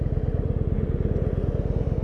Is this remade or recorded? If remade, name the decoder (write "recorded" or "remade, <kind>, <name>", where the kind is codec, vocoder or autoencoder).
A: recorded